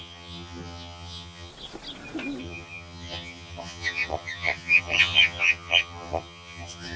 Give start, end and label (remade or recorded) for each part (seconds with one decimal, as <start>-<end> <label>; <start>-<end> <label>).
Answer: 0.0-1.5 remade; 1.5-2.4 recorded; 2.4-7.0 remade